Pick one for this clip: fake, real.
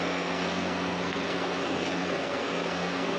fake